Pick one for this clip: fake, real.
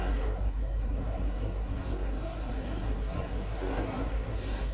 fake